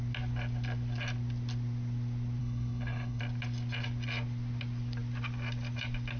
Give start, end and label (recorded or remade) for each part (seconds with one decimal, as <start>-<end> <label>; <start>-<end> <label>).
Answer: 0.0-2.4 recorded; 2.4-3.2 remade; 3.2-6.2 recorded